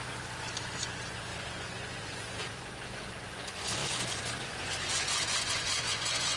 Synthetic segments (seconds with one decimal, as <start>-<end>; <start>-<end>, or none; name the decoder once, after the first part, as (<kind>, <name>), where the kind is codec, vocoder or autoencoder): 0.0-6.4 (vocoder, Vocos)